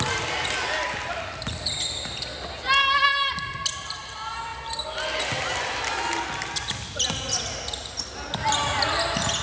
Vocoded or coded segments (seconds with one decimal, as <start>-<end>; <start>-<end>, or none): none